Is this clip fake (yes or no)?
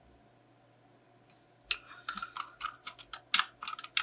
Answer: no